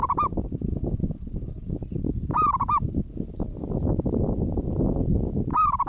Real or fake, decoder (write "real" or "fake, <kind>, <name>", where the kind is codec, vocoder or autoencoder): real